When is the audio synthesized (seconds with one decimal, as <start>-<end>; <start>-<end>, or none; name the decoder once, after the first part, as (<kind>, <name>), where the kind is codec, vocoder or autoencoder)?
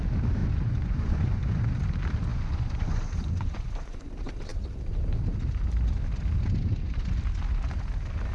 0.4-1.6 (vocoder, Vocos); 2.3-4.1